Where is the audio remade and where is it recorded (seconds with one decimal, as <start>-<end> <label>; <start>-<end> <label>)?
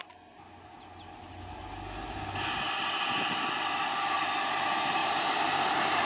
0.0-5.0 recorded; 5.0-6.0 remade